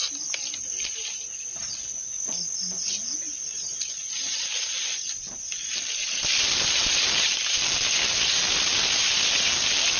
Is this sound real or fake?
real